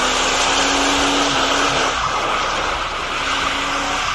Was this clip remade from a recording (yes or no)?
no